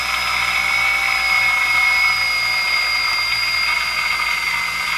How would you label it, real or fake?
real